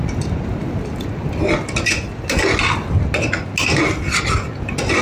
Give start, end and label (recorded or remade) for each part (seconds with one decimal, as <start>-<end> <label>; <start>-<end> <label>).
0.0-5.0 recorded